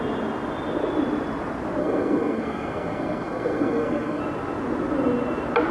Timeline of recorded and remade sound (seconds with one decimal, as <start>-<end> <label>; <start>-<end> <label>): 0.0-1.8 recorded; 1.8-4.2 remade; 4.2-5.7 recorded